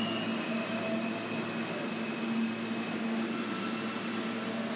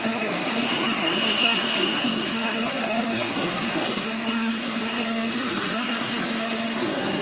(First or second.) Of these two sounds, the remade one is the second